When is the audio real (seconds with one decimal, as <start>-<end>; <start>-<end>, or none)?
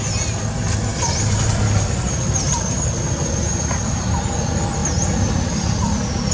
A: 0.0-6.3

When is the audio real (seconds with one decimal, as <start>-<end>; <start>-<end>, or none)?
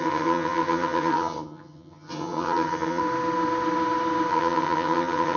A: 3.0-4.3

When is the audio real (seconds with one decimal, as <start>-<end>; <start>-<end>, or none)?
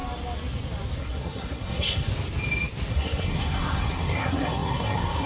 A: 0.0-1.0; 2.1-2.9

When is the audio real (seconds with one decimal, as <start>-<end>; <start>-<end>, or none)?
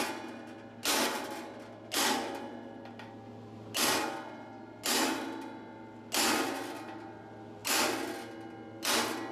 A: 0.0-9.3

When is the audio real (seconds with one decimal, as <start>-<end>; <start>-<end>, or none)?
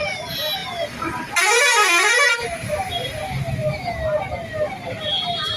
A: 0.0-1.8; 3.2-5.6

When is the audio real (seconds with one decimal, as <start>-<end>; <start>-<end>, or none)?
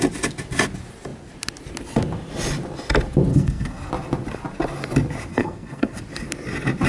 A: 0.0-3.3; 3.9-5.3; 6.0-6.9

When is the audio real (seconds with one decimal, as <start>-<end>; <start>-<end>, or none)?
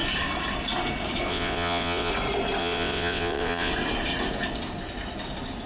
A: 0.0-1.3; 2.1-2.6; 3.7-5.7